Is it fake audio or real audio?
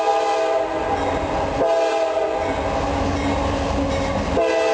real